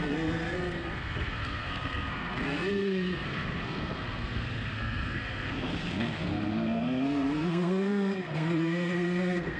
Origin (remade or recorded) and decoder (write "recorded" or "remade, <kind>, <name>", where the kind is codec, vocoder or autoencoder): remade, codec, SNAC